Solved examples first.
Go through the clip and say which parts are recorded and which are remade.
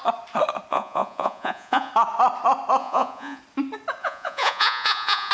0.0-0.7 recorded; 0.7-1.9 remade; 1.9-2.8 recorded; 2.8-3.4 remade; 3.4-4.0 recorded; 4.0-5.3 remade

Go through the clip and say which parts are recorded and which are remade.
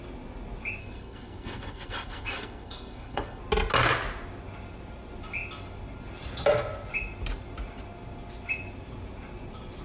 0.0-0.8 recorded; 0.8-3.4 remade; 3.4-9.8 recorded